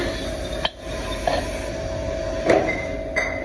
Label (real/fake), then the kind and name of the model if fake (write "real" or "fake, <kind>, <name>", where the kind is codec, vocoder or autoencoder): real